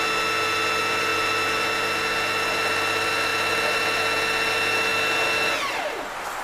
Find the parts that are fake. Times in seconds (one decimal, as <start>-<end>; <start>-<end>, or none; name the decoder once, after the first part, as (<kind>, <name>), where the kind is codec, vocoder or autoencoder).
none